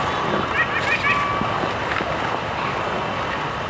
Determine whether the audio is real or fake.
real